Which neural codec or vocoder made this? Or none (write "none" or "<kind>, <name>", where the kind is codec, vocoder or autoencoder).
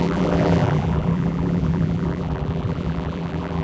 vocoder, BigVGAN v2